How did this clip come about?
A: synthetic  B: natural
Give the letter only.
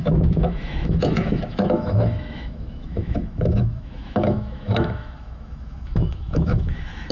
A